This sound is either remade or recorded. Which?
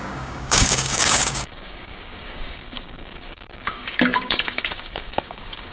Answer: remade